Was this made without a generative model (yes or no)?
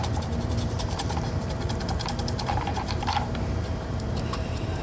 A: no